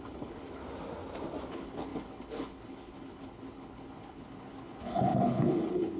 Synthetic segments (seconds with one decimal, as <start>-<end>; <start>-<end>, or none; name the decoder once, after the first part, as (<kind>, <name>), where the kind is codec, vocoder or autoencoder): 0.0-0.6 (codec, HILCodec); 1.5-6.0